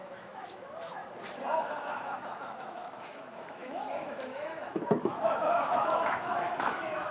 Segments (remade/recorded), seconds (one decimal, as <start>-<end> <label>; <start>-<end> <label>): 0.0-1.0 remade; 1.0-1.6 recorded; 1.6-7.1 remade